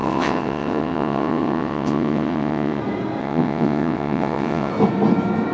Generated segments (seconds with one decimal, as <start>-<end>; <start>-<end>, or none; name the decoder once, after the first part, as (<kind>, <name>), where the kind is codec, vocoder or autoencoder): 0.0-2.8 (vocoder, WaveNeXt); 3.2-4.7